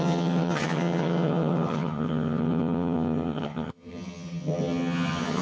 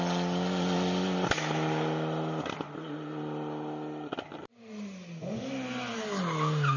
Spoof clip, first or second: first